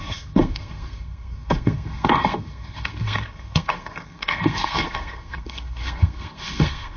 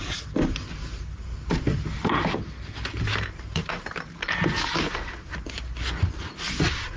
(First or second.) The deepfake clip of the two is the first